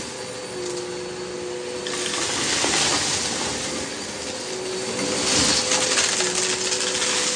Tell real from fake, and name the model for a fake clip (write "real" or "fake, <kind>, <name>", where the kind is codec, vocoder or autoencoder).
real